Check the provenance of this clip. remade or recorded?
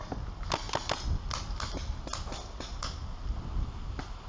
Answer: recorded